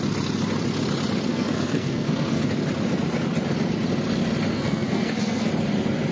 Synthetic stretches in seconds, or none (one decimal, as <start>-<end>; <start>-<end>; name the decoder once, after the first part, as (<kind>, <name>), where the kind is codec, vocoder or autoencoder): 1.3-2.4 (codec, SNAC); 4.5-5.5